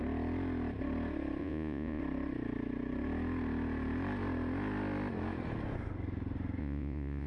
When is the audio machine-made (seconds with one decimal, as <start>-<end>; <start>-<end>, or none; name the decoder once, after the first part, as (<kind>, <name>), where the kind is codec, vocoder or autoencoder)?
1.4-2.0 (vocoder, Vocos); 6.6-7.3